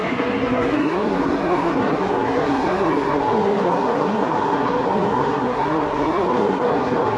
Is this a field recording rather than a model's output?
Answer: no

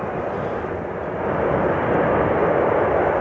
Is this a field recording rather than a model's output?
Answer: yes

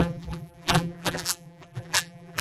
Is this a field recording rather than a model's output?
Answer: no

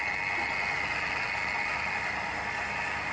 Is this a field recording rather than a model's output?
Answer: yes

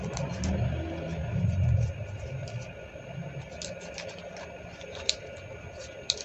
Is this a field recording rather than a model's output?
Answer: no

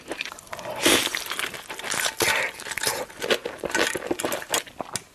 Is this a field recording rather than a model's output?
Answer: yes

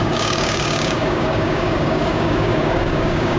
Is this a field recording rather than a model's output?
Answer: no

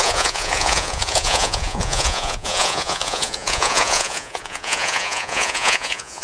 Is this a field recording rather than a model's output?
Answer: no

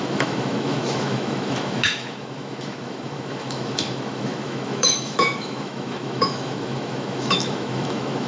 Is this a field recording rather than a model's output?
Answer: no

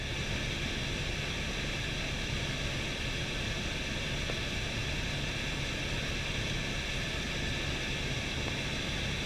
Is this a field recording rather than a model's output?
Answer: yes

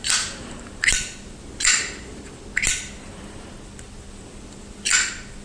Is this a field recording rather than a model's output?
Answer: yes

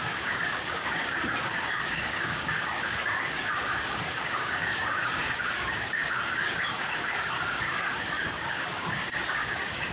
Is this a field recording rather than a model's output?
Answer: no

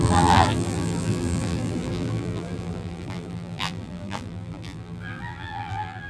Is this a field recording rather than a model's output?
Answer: no